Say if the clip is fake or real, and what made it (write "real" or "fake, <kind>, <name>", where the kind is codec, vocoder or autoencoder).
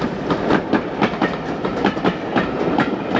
real